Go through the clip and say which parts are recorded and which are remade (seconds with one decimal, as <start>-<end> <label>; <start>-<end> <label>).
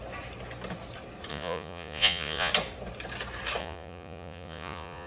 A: 0.0-1.3 recorded; 1.3-2.5 remade; 2.5-3.6 recorded; 3.6-5.1 remade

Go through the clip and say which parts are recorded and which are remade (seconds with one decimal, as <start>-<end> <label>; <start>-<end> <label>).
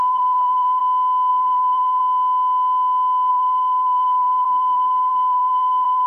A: 0.0-0.8 remade; 0.8-1.3 recorded; 1.3-2.0 remade; 2.0-3.3 recorded; 3.3-6.1 remade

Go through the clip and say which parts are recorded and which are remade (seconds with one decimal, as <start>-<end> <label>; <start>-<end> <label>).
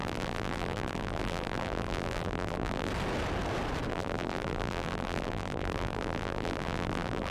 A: 0.0-2.9 remade; 2.9-3.9 recorded; 3.9-7.3 remade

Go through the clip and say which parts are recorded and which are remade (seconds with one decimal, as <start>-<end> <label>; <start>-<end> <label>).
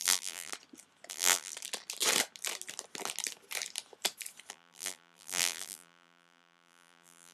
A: 0.0-0.5 remade; 0.5-1.1 recorded; 1.1-1.5 remade; 1.5-4.5 recorded; 4.5-7.3 remade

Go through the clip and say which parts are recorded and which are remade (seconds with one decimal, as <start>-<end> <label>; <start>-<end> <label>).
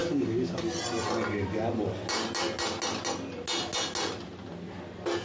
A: 0.0-0.6 remade; 0.6-5.2 recorded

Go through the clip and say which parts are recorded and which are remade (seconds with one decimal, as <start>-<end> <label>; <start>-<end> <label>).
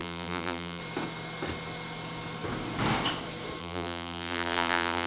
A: 0.0-0.8 remade; 0.8-3.6 recorded; 3.6-5.1 remade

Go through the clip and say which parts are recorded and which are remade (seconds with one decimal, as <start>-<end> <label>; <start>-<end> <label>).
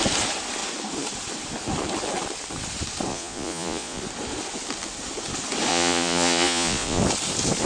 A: 0.0-3.1 recorded; 3.1-4.0 remade; 4.0-5.7 recorded; 5.7-7.0 remade; 7.0-7.7 recorded